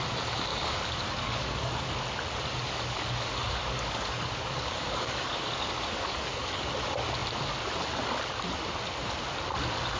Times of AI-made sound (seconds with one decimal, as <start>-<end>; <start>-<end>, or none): 0.5-1.9; 2.6-6.8